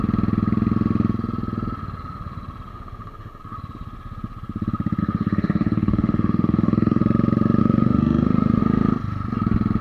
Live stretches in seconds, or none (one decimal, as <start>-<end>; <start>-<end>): 0.0-2.7; 3.4-5.0; 7.0-7.6; 8.6-9.8

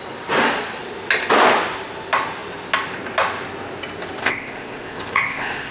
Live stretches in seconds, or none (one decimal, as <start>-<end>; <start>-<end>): 0.0-4.2

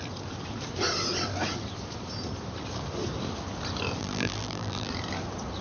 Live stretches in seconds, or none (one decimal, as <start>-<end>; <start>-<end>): 0.0-4.0; 4.9-5.6

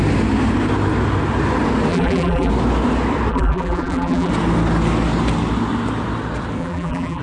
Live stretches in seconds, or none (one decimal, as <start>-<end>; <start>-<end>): 0.0-1.9; 2.5-3.3; 4.3-6.6

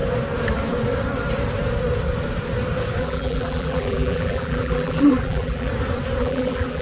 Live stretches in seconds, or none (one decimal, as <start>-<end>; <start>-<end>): 0.0-3.0; 5.7-6.2